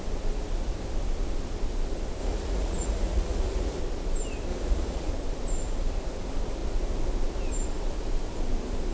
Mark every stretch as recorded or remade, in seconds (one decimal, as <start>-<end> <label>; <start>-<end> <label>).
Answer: 0.0-2.2 recorded; 2.2-3.8 remade; 3.8-4.5 recorded; 4.5-5.1 remade; 5.1-8.9 recorded